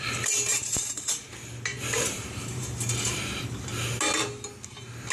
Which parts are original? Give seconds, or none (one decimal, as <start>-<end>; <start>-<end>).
0.0-0.5; 1.2-1.7; 2.8-5.1